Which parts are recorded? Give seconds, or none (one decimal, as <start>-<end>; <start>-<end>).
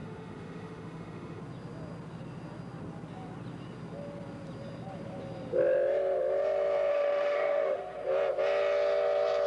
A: 1.4-6.9; 7.8-9.5